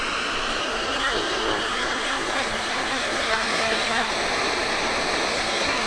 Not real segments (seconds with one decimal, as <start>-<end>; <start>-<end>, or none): 0.6-4.1; 5.3-5.9

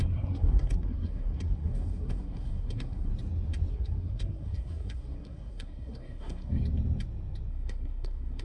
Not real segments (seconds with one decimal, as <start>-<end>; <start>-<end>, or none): 0.0-3.1; 3.7-6.6; 7.5-8.4

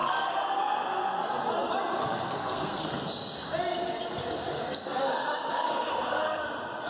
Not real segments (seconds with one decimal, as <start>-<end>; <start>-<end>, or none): 0.0-1.3; 2.0-2.9; 4.5-6.4

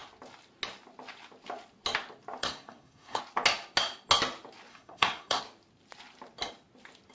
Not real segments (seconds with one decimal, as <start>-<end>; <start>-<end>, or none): 2.4-3.2; 4.7-5.4